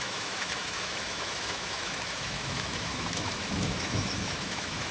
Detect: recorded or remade remade